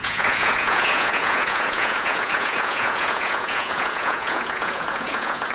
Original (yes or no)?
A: no